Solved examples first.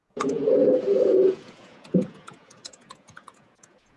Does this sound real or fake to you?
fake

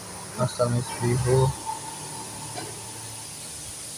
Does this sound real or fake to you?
real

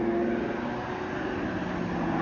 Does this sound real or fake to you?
real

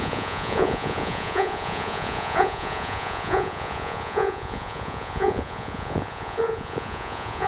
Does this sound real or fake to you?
fake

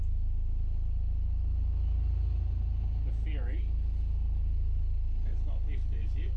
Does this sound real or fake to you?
real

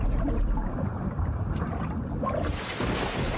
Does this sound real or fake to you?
fake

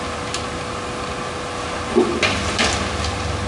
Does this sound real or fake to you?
real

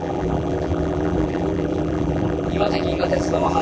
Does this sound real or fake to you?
fake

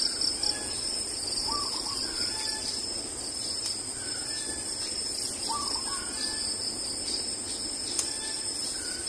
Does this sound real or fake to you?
real